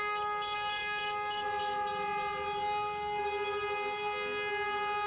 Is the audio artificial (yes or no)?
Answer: no